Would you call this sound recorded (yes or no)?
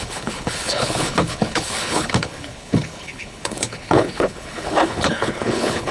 no